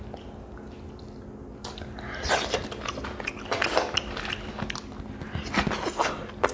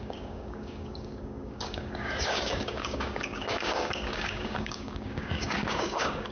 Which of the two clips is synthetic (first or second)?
second